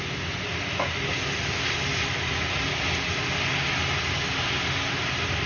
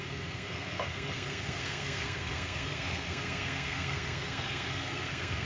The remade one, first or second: second